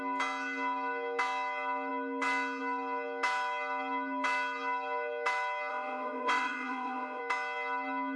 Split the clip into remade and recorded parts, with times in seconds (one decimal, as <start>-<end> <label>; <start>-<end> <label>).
0.0-5.7 recorded; 5.7-7.2 remade; 7.2-8.2 recorded

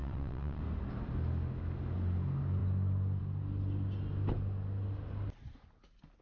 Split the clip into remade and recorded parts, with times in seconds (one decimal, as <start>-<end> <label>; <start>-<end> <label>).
0.0-0.6 remade; 0.6-6.2 recorded

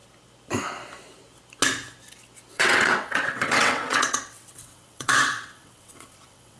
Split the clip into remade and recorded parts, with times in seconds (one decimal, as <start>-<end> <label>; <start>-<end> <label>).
0.0-2.5 recorded; 2.5-6.6 remade

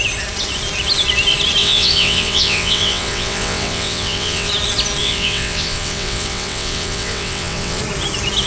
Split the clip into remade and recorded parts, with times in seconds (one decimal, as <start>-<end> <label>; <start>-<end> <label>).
0.0-1.6 recorded; 1.6-4.5 remade; 4.5-5.0 recorded; 5.0-7.8 remade; 7.8-8.5 recorded

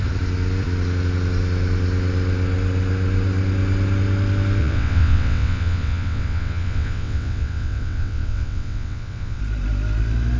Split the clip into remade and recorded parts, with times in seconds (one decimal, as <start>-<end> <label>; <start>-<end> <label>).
0.0-4.6 recorded; 4.6-9.4 remade; 9.4-10.4 recorded

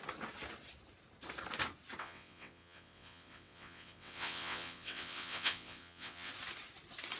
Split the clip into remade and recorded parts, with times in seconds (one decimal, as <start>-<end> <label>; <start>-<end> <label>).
0.0-2.0 recorded; 2.0-6.3 remade; 6.3-7.2 recorded

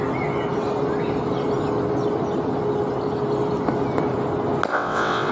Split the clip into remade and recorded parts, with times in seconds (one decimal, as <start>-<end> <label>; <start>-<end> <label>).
0.0-4.7 recorded; 4.7-5.3 remade